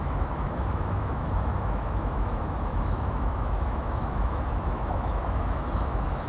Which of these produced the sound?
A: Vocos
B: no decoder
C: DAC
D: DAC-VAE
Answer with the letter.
D